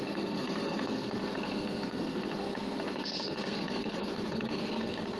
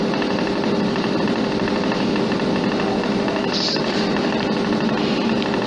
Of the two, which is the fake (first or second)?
first